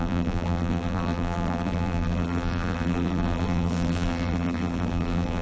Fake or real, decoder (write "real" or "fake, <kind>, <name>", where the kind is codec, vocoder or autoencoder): fake, vocoder, BigVGAN v2